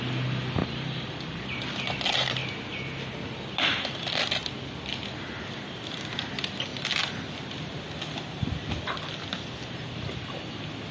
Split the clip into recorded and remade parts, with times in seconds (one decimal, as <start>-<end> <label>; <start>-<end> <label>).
0.0-0.6 recorded; 0.6-1.4 remade; 1.4-10.9 recorded